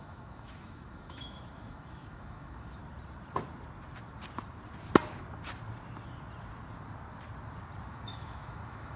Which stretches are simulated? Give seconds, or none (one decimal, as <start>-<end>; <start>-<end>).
0.0-2.8; 7.9-9.0